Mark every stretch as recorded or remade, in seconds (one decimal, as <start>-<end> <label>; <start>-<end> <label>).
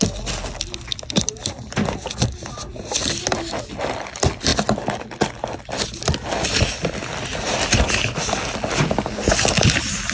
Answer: 0.0-10.1 recorded